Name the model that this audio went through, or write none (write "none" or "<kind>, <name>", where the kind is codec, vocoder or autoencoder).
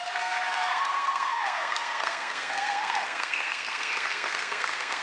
codec, SNAC